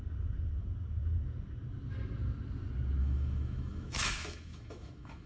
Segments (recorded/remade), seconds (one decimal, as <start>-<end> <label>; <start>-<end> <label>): 0.0-3.0 recorded; 3.0-5.3 remade